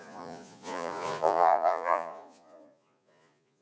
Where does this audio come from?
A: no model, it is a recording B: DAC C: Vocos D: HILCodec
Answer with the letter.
C